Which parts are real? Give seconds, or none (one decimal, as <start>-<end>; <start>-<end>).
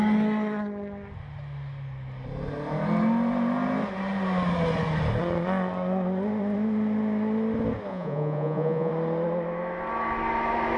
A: 0.0-7.9; 8.9-10.8